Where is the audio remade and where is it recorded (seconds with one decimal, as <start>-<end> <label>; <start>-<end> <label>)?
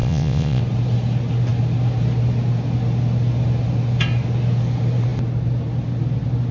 0.0-0.6 remade; 0.6-6.5 recorded